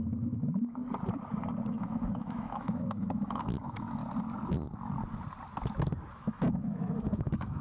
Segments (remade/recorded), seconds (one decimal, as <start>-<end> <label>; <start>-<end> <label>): 0.0-0.8 remade; 0.8-1.7 recorded; 1.7-4.0 remade; 4.0-6.1 recorded; 6.1-7.6 remade